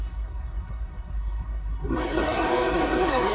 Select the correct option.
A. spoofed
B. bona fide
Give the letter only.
A